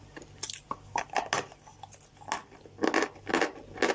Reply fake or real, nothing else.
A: real